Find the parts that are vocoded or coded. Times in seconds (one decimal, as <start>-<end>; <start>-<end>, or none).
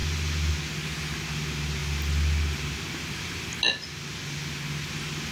none